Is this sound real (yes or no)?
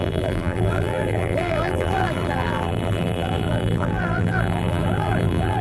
no